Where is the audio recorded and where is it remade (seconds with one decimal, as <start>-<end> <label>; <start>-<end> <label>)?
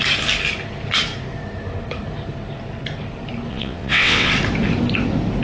0.0-3.5 recorded; 3.5-4.3 remade; 4.3-5.4 recorded